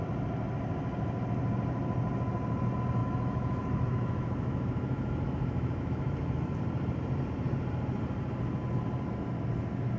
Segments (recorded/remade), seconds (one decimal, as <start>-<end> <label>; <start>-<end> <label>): 0.0-3.0 recorded; 3.0-6.6 remade; 6.6-10.0 recorded

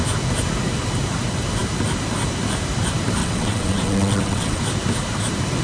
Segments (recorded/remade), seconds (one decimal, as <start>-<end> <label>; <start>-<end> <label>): 0.0-3.2 recorded; 3.2-4.6 remade; 4.6-5.6 recorded

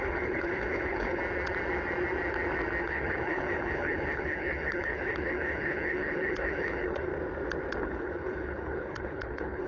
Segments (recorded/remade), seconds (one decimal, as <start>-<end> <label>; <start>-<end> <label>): 0.0-1.2 remade; 1.2-2.8 recorded; 2.8-7.1 remade; 7.1-7.8 recorded; 7.8-9.7 remade

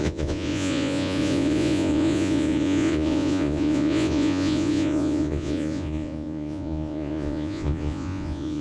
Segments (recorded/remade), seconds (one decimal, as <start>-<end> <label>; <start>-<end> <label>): 0.0-8.6 remade

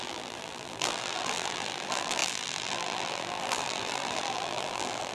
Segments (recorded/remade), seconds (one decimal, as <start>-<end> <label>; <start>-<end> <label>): 0.0-5.1 remade